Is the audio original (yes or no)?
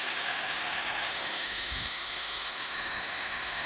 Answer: no